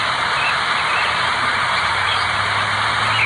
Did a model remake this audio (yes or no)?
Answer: no